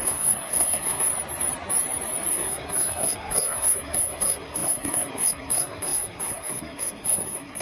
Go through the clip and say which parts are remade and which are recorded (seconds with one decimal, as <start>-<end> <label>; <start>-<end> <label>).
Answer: 0.0-1.1 remade; 1.1-2.3 recorded; 2.3-7.6 remade